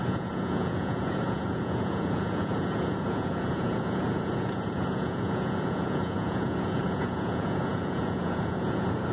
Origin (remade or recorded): remade